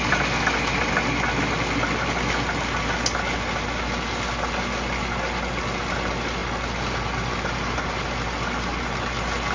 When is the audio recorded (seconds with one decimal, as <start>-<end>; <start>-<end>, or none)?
0.0-9.5